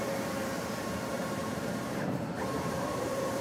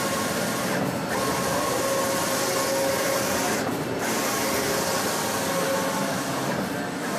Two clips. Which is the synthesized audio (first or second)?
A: first